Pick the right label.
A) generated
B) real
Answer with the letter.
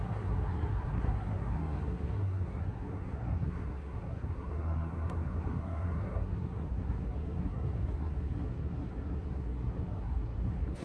A